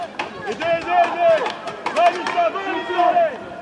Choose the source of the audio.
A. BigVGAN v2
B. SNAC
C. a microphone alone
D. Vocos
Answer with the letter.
C